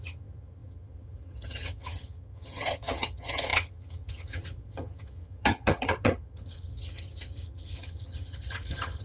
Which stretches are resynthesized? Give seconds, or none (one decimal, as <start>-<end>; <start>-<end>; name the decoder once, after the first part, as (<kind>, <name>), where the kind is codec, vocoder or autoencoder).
0.0-9.0 (vocoder, HiFi-GAN)